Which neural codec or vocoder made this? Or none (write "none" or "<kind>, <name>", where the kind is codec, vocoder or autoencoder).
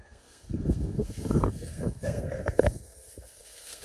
codec, SNAC